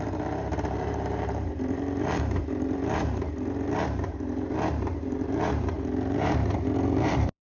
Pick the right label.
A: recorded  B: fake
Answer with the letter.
B